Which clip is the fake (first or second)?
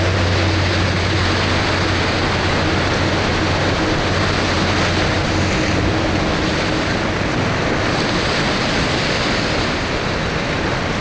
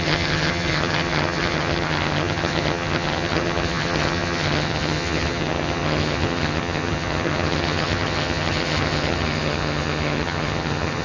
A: second